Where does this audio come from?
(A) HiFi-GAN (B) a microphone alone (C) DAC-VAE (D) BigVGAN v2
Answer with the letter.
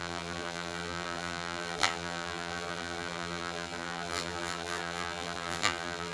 D